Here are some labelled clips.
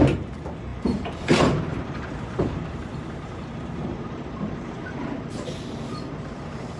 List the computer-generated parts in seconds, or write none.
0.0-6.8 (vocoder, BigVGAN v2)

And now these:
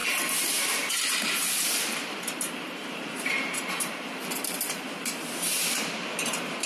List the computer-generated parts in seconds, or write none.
0.0-6.7 (vocoder, BigVGAN v2)

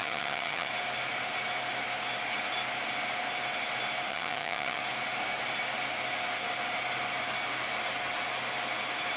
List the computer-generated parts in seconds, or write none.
0.0-0.7 (vocoder, HiFi-GAN); 4.1-4.8

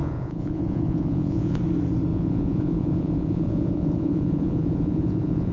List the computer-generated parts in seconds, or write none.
0.0-1.6 (vocoder, Vocos); 2.1-5.5

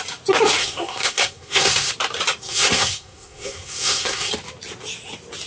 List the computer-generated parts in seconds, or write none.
0.6-1.9 (codec, SNAC); 2.4-4.3

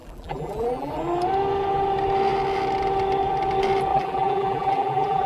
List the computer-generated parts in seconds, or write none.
0.0-0.9 (vocoder, BigVGAN v2); 3.9-5.3

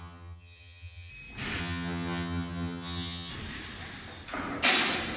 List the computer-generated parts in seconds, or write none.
0.0-1.1 (vocoder, HiFi-GAN); 1.6-3.3

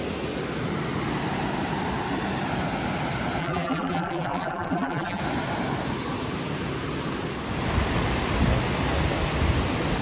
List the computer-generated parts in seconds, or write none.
3.4-5.2 (vocoder, BigVGAN v2)